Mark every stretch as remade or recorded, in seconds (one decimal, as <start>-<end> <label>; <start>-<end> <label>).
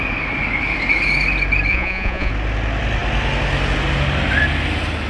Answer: 0.0-1.7 recorded; 1.7-2.3 remade; 2.3-5.1 recorded